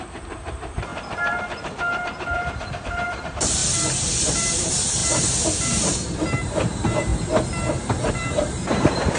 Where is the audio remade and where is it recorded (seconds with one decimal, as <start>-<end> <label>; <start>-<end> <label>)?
0.0-0.9 remade; 0.9-1.4 recorded; 1.4-3.6 remade; 3.6-4.3 recorded; 4.3-7.1 remade; 7.1-8.1 recorded; 8.1-9.2 remade